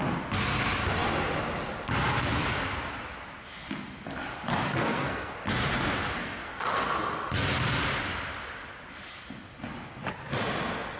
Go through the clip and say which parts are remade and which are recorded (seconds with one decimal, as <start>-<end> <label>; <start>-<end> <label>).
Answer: 0.0-4.7 recorded; 4.7-5.3 remade; 5.3-6.2 recorded; 6.2-6.9 remade; 6.9-11.0 recorded